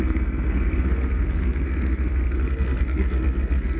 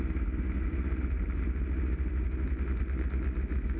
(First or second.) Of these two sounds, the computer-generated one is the first